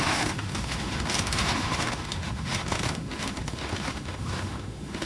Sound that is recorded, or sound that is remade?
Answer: remade